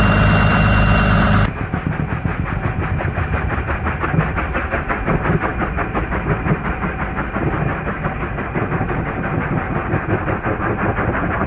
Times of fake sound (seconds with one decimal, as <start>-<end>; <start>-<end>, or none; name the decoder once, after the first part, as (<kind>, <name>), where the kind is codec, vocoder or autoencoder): none